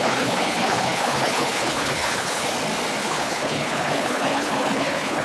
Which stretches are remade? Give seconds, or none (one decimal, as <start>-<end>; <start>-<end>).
0.0-2.5; 3.0-5.2

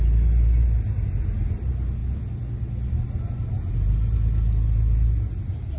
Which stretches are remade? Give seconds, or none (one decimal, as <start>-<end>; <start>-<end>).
none